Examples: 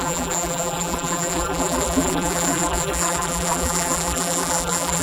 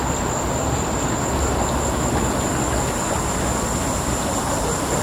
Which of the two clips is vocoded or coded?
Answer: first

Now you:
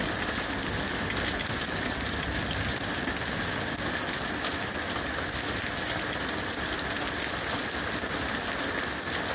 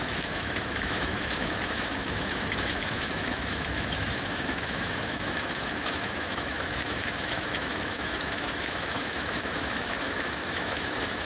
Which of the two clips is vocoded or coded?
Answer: second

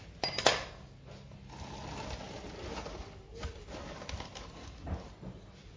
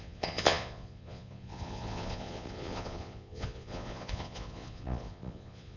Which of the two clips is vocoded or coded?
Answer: second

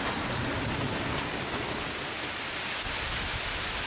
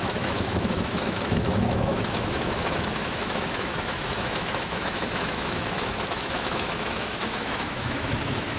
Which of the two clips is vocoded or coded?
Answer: second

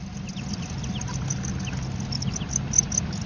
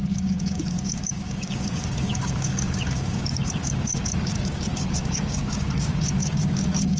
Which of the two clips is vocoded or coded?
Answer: second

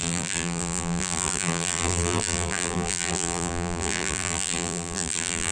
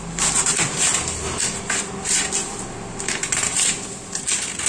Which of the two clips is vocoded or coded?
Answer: first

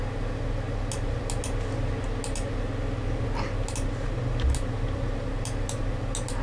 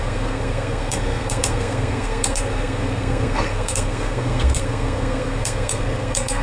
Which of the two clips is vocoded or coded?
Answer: second